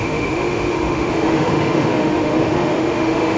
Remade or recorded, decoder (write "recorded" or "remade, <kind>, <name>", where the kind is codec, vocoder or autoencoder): remade, autoencoder, DAC-VAE